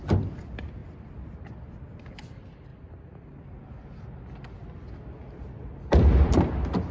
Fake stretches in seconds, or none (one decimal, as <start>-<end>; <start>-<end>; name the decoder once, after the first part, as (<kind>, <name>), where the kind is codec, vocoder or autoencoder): none